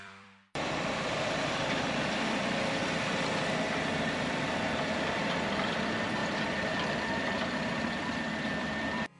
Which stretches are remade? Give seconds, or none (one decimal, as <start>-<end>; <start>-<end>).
0.0-6.2; 7.0-9.2